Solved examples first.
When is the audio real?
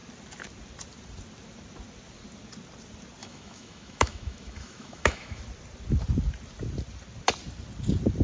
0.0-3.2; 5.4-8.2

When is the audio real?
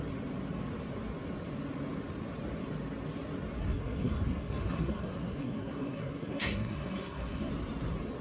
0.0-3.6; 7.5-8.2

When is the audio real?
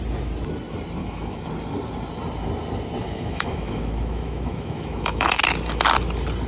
0.0-1.0; 1.5-3.0; 5.4-6.5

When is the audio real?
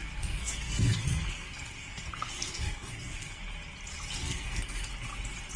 3.4-4.2; 4.9-5.6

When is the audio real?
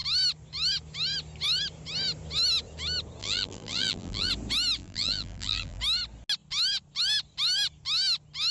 0.0-3.2; 4.3-4.8; 5.8-8.5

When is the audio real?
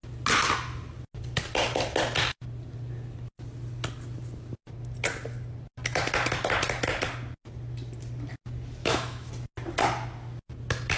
0.0-8.8; 9.3-11.0